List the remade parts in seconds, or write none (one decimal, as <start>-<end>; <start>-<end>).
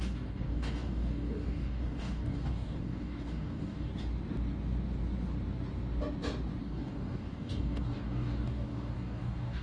0.0-3.9; 6.6-9.6